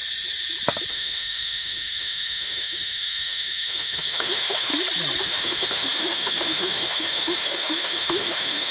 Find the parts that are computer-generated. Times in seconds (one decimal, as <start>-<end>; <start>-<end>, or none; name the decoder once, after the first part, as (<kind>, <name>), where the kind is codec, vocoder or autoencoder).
0.9-4.7 (autoencoder, DAC-VAE); 5.2-8.7